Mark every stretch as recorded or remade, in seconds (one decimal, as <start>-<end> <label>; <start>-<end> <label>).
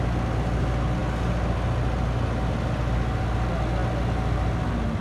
0.0-5.0 recorded